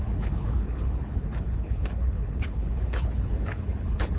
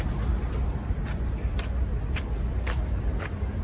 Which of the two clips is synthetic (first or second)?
first